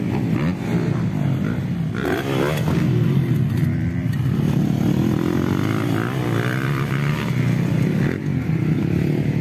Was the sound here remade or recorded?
recorded